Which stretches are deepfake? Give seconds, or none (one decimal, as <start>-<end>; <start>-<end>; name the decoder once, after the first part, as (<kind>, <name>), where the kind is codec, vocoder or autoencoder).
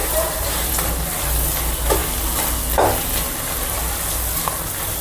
0.0-0.7 (vocoder, BigVGAN v2)